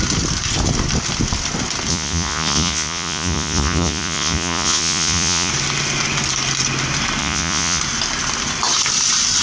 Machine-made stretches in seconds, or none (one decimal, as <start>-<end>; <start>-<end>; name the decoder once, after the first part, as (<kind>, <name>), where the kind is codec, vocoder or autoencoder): 1.9-5.5 (vocoder, Vocos); 7.2-7.8